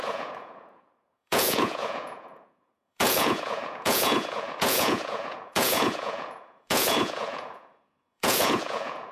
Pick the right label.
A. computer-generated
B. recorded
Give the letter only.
A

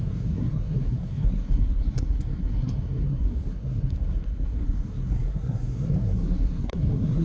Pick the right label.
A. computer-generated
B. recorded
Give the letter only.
A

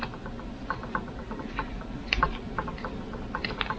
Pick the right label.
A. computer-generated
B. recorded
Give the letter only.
B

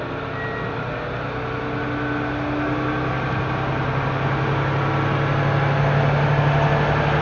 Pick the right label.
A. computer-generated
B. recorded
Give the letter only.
B